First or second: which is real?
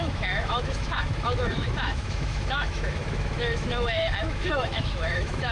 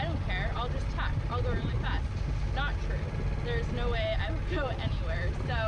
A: second